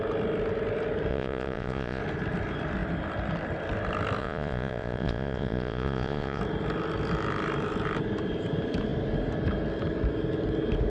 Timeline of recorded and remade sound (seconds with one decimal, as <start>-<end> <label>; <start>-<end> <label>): 0.0-1.1 recorded; 1.1-2.0 remade; 2.0-4.2 recorded; 4.2-6.4 remade; 6.4-10.9 recorded